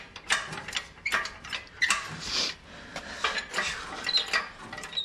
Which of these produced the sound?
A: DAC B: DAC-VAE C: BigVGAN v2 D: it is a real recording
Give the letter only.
D